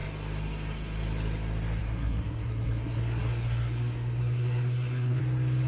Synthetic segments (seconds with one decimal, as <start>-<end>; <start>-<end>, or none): 1.8-5.2